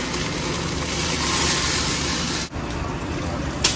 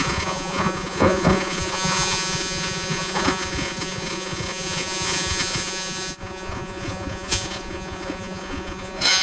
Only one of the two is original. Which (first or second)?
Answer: first